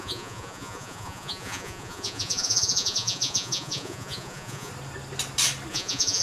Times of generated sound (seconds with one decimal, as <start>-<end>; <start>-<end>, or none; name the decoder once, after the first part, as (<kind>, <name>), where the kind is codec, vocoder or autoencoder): 0.0-4.7 (vocoder, Vocos); 5.7-6.2